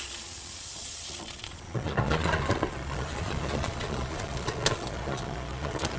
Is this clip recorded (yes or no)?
no